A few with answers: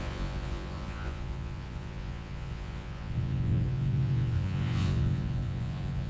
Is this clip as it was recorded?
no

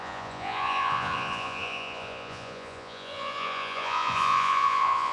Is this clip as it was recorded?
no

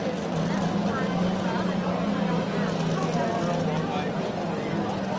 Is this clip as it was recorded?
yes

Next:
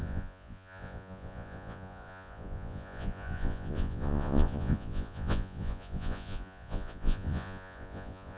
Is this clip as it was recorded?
no